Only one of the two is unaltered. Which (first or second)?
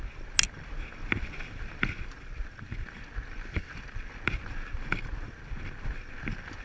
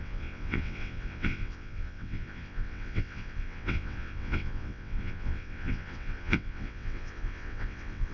first